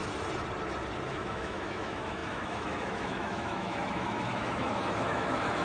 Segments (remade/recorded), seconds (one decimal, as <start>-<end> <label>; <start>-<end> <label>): 0.0-1.1 recorded; 1.1-5.6 remade